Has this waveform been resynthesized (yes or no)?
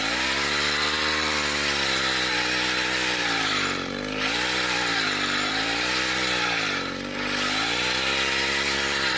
yes